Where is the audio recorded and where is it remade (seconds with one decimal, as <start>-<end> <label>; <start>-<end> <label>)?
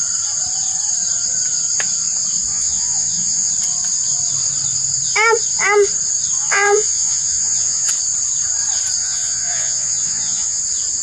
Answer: 0.0-2.5 recorded; 2.5-3.5 remade; 3.5-6.4 recorded; 6.4-7.9 remade; 7.9-9.0 recorded; 9.0-10.6 remade; 10.6-11.0 recorded